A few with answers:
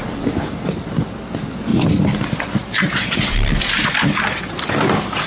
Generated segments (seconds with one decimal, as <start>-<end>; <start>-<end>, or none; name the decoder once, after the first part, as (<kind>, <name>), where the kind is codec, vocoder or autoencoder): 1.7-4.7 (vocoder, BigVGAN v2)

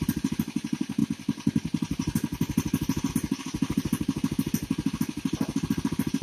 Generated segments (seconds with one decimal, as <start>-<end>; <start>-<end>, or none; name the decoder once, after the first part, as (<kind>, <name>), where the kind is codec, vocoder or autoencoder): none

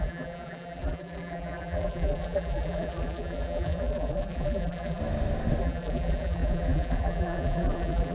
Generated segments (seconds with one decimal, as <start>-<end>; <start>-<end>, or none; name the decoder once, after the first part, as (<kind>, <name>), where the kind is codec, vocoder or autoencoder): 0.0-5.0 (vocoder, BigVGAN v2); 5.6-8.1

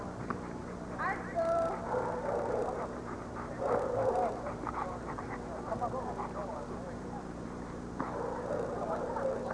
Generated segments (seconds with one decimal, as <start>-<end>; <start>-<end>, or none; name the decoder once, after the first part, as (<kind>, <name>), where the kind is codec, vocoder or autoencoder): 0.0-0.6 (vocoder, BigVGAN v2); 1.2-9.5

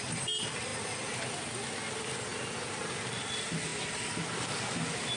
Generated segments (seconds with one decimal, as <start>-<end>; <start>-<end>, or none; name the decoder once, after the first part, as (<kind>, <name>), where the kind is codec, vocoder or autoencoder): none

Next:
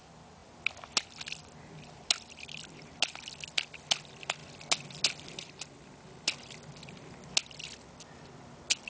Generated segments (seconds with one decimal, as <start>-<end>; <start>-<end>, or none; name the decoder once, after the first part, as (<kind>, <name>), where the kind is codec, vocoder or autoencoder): none